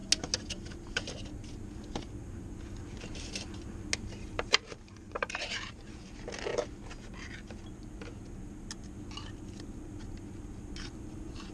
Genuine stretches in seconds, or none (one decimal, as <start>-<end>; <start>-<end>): 0.0-3.0; 3.5-4.2; 6.5-11.1